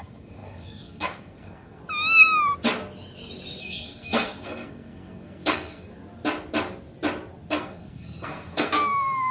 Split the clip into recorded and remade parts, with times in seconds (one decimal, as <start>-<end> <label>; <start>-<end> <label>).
0.0-1.8 remade; 1.8-3.6 recorded; 3.6-5.9 remade; 5.9-7.5 recorded; 7.5-9.3 remade